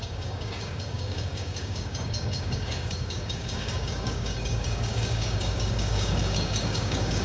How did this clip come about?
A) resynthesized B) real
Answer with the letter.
A